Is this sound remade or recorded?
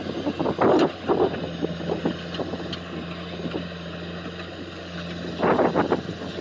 recorded